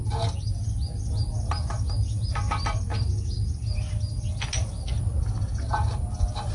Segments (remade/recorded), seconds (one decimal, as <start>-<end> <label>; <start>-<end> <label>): 0.0-6.5 recorded